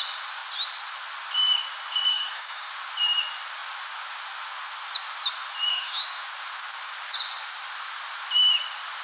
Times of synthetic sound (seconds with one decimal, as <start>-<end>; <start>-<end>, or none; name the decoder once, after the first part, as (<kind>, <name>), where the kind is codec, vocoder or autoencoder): 2.1-2.7 (autoencoder, DAC-VAE); 5.7-6.2